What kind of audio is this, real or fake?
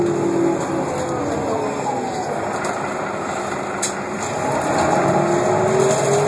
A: real